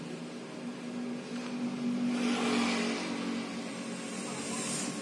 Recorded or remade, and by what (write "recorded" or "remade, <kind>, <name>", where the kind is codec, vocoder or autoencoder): recorded